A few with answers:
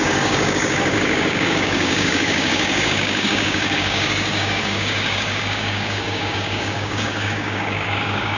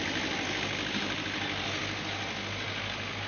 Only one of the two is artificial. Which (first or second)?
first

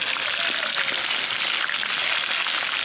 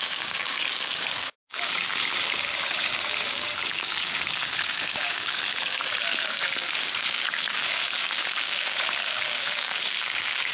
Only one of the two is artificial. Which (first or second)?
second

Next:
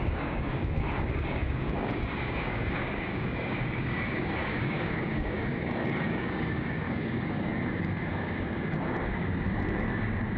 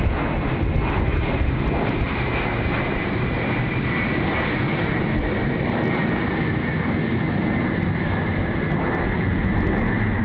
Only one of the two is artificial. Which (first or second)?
first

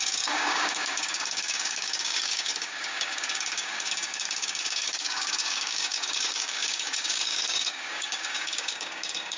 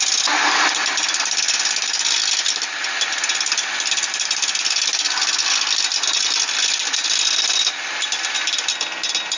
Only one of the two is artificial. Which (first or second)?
first